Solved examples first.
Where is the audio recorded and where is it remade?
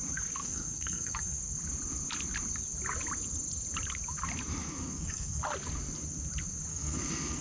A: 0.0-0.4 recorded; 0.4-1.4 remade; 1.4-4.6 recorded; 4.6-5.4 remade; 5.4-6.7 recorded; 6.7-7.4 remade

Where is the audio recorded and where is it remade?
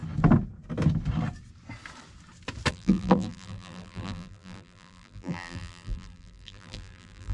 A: 0.0-2.7 recorded; 2.7-7.3 remade